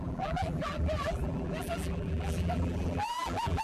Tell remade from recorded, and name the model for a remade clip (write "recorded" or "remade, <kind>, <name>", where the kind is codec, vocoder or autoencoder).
remade, vocoder, BigVGAN v2